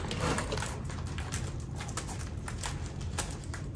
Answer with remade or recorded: recorded